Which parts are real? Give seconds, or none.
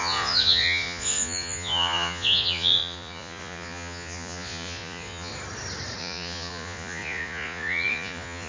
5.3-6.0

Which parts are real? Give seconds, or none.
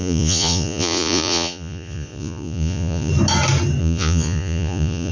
3.1-3.8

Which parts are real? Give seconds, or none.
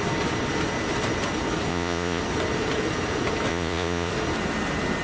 0.0-1.7; 2.2-3.5; 4.1-5.0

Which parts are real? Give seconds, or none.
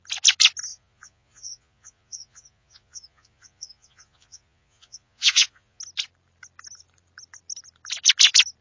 0.0-0.7; 5.8-8.6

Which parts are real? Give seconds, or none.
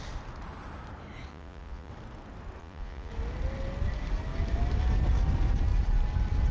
0.0-1.3; 1.9-2.6; 3.1-6.5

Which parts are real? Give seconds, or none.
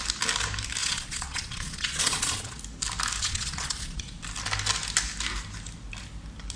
0.0-0.8; 2.6-3.2; 4.2-6.6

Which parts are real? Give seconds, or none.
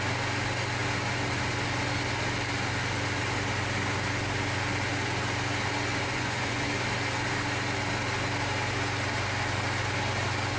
0.0-6.1; 6.7-10.6